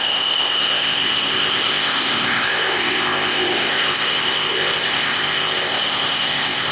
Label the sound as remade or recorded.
remade